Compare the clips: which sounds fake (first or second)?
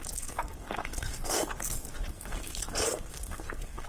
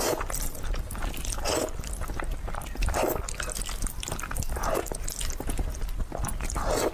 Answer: first